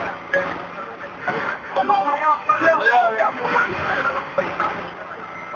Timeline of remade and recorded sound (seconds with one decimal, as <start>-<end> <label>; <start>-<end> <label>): 0.0-1.2 recorded; 1.2-4.4 remade; 4.4-5.6 recorded

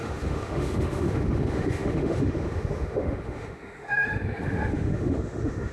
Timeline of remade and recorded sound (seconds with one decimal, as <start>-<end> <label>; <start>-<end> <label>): 0.0-5.7 remade